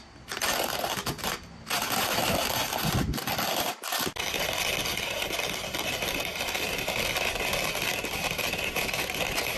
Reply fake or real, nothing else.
real